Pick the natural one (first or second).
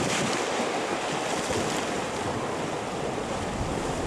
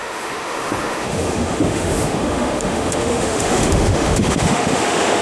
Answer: first